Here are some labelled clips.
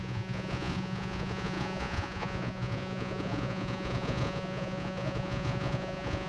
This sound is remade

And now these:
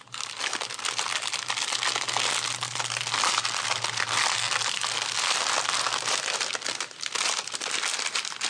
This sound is recorded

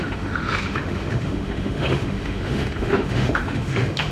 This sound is remade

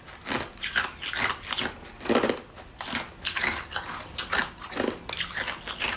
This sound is recorded